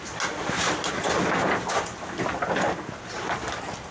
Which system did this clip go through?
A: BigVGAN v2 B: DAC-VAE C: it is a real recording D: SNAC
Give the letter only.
C